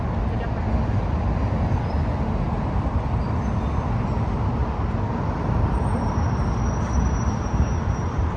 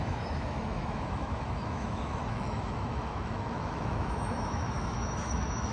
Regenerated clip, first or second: second